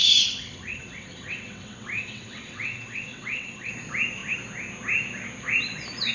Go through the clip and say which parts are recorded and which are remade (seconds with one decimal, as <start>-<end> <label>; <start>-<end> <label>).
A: 0.0-3.7 remade; 3.7-6.1 recorded